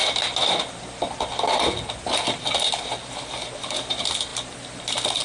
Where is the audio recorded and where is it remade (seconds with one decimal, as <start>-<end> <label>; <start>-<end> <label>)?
0.0-5.2 recorded